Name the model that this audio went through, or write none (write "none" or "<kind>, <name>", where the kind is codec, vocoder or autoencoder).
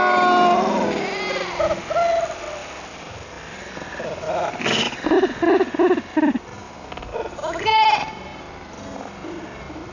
none